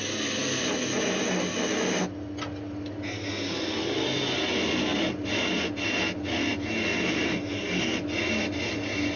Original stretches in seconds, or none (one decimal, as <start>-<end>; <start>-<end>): 0.0-9.2